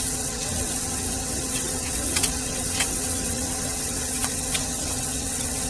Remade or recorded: remade